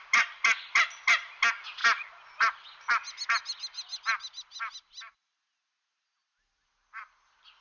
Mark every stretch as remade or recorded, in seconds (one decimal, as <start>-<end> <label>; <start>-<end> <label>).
0.0-7.6 recorded